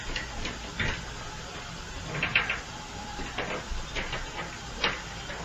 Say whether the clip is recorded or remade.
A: recorded